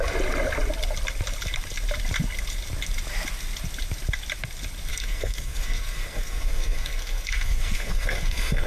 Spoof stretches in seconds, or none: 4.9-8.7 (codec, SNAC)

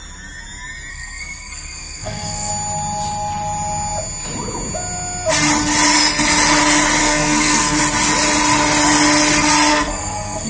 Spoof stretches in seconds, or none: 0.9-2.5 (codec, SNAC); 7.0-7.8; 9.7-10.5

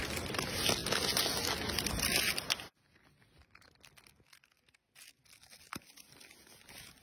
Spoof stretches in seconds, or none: none

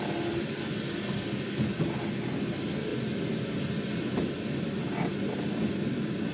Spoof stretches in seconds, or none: none